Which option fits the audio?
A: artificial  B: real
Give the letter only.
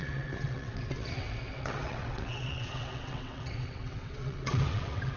A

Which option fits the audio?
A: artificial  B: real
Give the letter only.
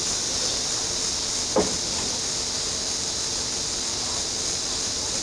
B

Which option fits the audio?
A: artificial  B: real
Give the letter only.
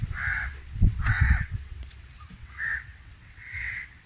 A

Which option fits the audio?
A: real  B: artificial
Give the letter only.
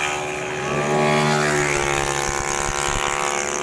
A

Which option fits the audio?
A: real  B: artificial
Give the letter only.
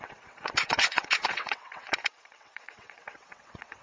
B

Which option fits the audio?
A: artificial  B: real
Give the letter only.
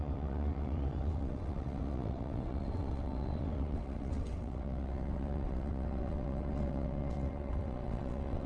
A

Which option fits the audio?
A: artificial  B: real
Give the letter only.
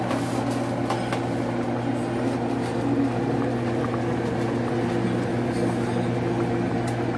B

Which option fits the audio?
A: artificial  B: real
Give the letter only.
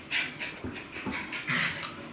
B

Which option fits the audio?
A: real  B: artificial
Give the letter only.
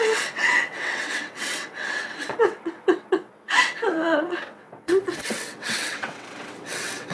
B